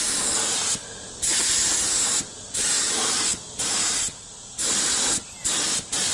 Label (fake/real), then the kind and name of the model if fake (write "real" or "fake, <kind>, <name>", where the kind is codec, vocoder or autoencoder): real